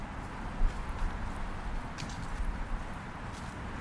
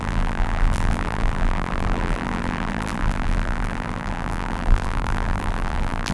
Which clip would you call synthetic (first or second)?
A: second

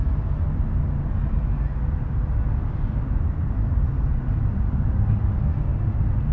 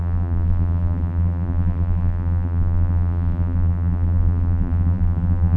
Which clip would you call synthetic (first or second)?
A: second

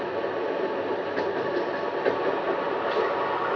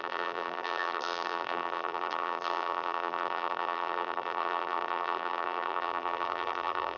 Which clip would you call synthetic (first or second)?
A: second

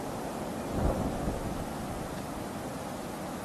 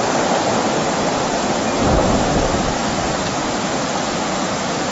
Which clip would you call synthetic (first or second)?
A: first